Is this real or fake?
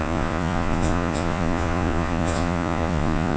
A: fake